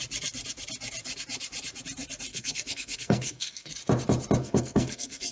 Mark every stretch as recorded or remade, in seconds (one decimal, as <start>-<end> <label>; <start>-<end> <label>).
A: 0.0-2.3 recorded; 2.3-3.7 remade; 3.7-4.4 recorded; 4.4-5.3 remade